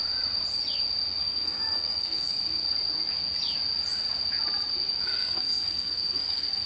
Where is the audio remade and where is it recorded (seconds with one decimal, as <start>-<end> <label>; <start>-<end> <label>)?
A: 0.0-1.2 recorded; 1.2-2.3 remade; 2.3-5.0 recorded; 5.0-6.7 remade